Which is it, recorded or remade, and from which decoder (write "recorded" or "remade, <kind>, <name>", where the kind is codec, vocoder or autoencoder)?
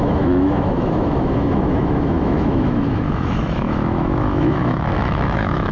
remade, autoencoder, DAC-VAE